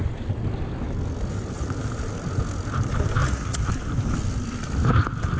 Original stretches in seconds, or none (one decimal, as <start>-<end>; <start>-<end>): 0.0-3.2; 3.7-5.4